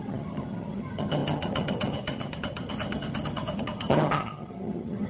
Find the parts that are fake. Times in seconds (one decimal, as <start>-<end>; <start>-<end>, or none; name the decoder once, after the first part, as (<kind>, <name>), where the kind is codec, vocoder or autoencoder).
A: 0.0-5.1 (vocoder, HiFi-GAN)